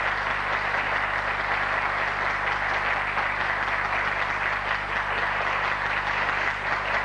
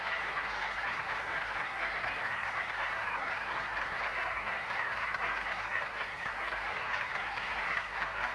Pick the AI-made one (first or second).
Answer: second